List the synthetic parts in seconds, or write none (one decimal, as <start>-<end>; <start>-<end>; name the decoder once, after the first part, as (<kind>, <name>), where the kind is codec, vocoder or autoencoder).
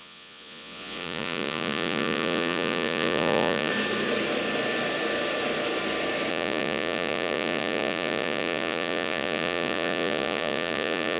0.0-3.7 (vocoder, Vocos); 6.3-11.2